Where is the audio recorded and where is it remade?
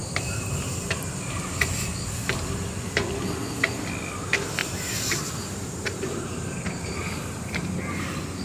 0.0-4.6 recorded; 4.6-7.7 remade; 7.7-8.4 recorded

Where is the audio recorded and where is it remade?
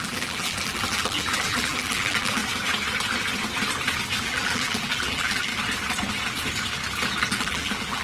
0.0-2.4 remade; 2.4-4.2 recorded; 4.2-5.5 remade; 5.5-7.2 recorded; 7.2-8.0 remade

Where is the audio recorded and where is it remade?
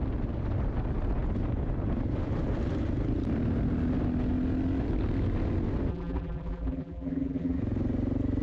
0.0-5.9 recorded; 5.9-7.6 remade; 7.6-8.4 recorded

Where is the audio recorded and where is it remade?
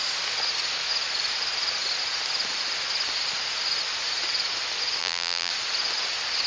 0.0-5.0 recorded; 5.0-5.5 remade; 5.5-6.5 recorded